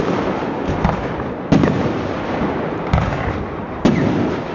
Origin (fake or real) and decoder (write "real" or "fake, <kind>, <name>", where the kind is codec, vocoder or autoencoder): real